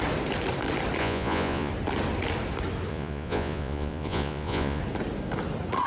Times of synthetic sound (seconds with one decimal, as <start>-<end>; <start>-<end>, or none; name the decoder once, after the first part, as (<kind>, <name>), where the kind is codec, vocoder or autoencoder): 1.0-1.7 (vocoder, Vocos); 2.9-4.8